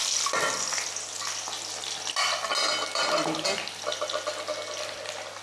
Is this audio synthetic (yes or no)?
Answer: no